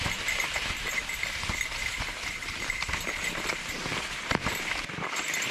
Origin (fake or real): real